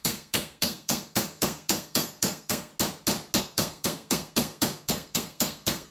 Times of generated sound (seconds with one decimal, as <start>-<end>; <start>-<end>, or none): 0.0-2.7; 3.4-5.9

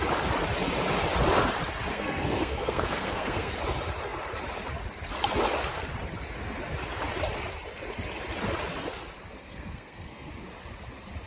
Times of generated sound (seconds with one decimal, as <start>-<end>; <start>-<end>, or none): 1.9-3.5; 9.4-10.3

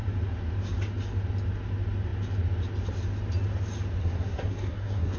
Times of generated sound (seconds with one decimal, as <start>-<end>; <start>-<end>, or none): 4.0-5.2

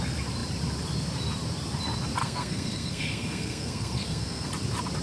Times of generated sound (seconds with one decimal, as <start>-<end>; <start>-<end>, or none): 2.2-4.5